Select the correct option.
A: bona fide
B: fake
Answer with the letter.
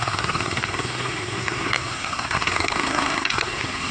B